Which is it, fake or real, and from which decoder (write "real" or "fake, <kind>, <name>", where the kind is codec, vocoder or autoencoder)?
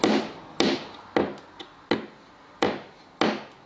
real